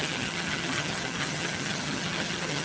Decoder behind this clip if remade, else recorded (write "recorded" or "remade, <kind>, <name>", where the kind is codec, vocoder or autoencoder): remade, vocoder, HiFi-GAN